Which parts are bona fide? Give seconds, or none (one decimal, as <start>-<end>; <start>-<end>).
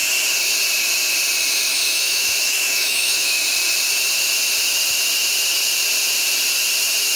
0.0-1.7; 3.4-7.2